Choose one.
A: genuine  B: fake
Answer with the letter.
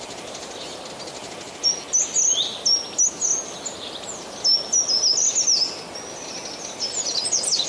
A